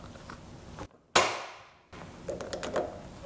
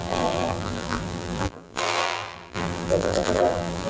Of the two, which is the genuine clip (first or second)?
first